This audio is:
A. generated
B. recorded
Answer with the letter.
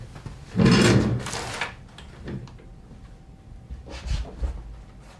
B